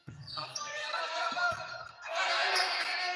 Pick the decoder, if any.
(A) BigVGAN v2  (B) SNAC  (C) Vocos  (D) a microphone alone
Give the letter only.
B